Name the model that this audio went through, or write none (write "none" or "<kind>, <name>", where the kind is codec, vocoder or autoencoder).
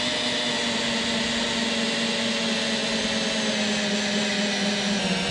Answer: none